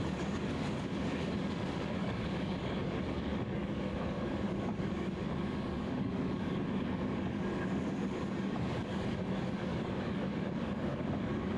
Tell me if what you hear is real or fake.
fake